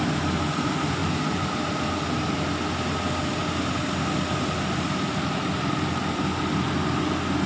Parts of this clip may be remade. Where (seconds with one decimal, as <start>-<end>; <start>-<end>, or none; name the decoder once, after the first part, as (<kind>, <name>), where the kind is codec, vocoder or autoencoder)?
1.0-1.7 (vocoder, BigVGAN v2)